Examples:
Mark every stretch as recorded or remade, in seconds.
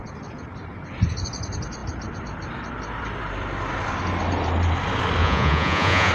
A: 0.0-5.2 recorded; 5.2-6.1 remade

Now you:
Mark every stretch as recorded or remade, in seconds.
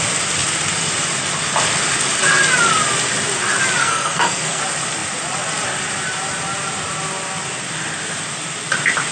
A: 0.0-3.8 recorded; 3.8-4.6 remade; 4.6-9.1 recorded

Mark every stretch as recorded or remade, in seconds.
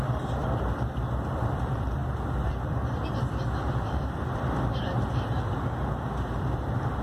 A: 0.0-2.0 remade; 2.0-2.5 recorded; 2.5-5.3 remade; 5.3-6.4 recorded; 6.4-7.0 remade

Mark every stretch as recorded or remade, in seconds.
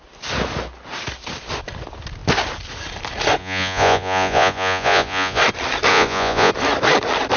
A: 0.0-3.4 recorded; 3.4-5.4 remade; 5.4-5.9 recorded; 5.9-6.5 remade; 6.5-7.4 recorded